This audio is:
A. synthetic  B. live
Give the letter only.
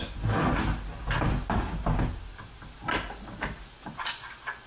B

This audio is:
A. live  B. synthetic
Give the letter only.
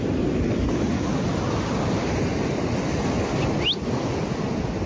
A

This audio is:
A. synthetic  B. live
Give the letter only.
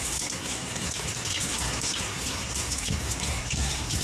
A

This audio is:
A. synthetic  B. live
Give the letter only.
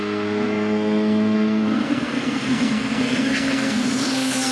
A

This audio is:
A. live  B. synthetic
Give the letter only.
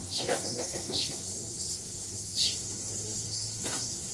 B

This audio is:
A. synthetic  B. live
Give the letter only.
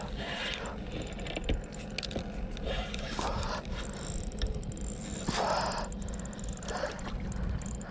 B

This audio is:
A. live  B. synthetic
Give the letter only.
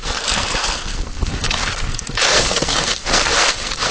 B